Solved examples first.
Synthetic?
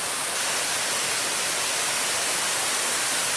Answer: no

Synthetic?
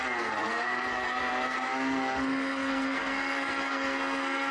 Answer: yes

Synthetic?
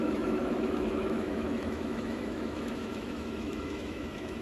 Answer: yes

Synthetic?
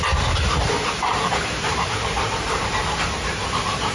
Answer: yes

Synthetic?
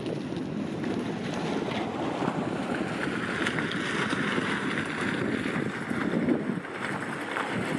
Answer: no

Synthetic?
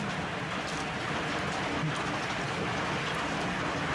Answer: no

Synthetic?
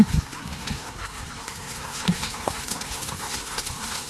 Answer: yes